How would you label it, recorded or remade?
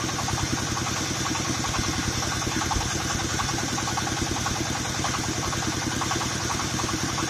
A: recorded